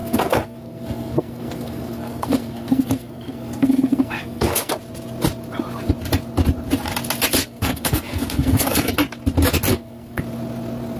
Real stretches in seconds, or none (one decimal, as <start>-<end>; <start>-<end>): 4.7-7.4; 8.9-9.7; 10.2-11.0